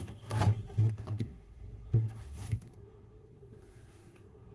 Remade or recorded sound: remade